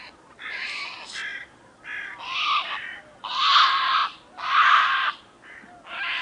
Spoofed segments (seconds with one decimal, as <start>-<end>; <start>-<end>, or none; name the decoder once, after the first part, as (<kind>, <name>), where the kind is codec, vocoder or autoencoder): none